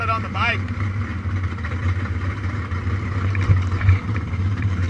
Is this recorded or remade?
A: remade